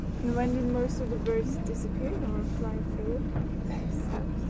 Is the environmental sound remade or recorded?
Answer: recorded